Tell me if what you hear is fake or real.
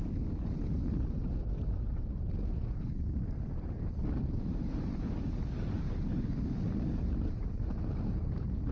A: real